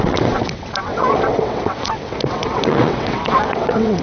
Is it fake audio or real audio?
fake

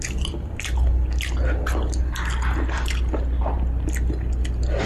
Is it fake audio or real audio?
real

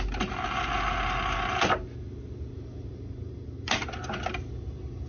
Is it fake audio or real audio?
real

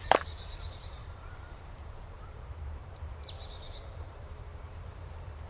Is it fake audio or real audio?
fake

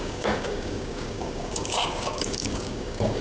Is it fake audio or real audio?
fake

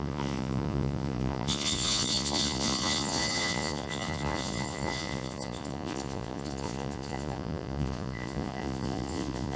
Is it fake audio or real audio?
fake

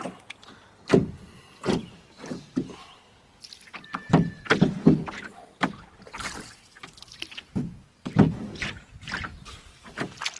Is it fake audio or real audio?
fake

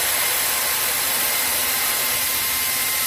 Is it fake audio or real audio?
fake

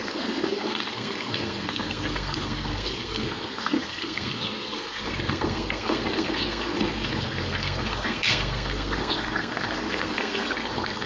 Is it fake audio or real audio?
fake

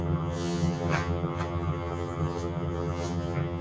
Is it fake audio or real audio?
fake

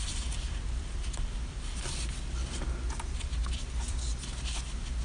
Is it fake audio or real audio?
real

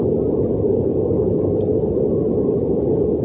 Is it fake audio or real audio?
real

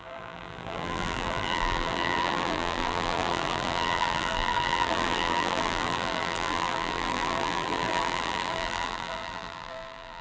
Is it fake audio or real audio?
fake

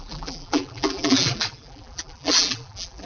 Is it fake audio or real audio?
fake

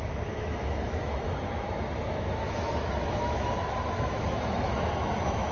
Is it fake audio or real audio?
fake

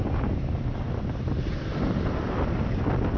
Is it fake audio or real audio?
real